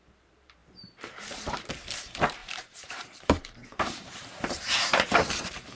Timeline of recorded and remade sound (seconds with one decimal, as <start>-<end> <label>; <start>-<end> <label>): 0.0-5.7 remade